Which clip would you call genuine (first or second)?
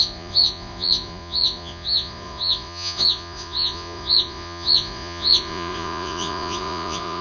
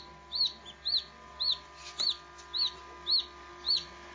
second